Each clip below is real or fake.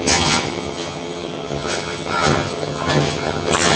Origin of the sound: fake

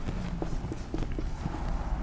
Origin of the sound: real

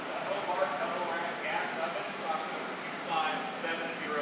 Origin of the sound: real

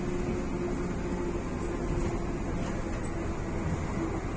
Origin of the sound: real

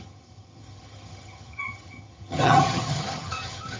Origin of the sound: fake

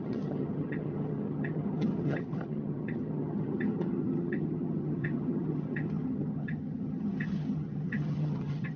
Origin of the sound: fake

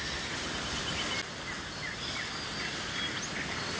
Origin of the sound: real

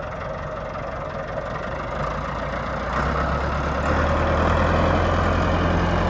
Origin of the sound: real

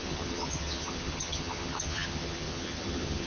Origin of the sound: fake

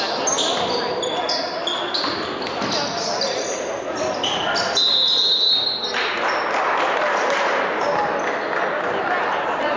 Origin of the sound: real